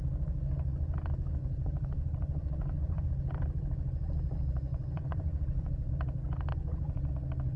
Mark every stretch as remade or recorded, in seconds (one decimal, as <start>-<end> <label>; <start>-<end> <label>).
0.0-1.4 recorded; 1.4-3.1 remade; 3.1-4.7 recorded; 4.7-5.9 remade; 5.9-6.5 recorded; 6.5-7.1 remade; 7.1-7.6 recorded